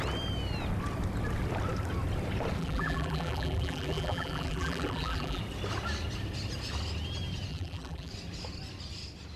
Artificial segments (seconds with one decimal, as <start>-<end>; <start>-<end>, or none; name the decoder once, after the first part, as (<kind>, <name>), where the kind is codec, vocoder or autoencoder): 2.6-5.4 (vocoder, BigVGAN v2); 7.5-8.1